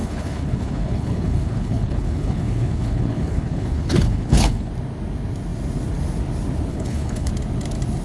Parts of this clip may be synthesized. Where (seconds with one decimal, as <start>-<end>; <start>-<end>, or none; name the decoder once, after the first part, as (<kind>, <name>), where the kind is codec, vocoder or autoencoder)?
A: 0.0-4.7 (codec, HILCodec); 6.7-7.3